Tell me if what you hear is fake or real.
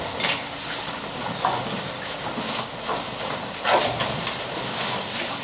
real